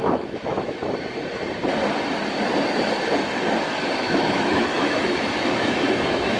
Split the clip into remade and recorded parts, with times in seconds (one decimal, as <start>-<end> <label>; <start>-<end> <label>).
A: 0.0-0.8 remade; 0.8-4.0 recorded; 4.0-6.4 remade